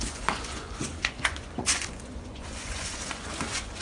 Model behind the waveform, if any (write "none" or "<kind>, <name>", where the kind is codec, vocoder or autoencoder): vocoder, Vocos